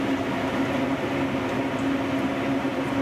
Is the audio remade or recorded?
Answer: recorded